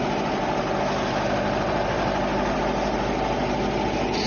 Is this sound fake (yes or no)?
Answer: no